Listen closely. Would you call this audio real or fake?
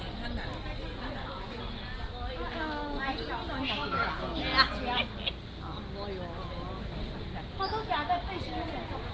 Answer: real